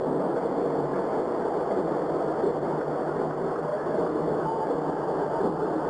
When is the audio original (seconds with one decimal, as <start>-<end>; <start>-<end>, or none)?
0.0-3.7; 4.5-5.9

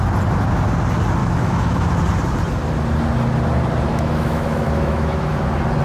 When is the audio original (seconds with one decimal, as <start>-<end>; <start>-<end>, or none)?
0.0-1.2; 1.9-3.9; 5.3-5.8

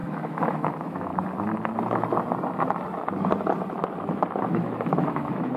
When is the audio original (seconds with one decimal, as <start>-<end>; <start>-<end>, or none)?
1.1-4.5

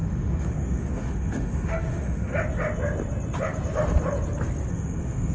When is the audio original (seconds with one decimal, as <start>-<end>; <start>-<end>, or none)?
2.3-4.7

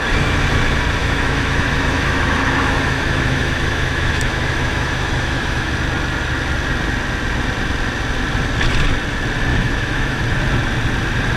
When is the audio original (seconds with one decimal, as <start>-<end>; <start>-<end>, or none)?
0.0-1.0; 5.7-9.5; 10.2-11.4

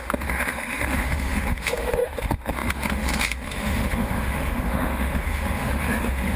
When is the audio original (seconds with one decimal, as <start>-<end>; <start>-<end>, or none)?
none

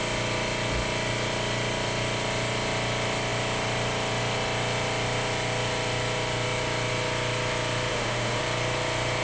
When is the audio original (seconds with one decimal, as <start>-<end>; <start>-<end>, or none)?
0.0-7.9; 8.4-9.2